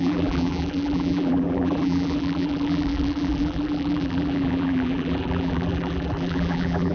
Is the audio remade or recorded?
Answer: remade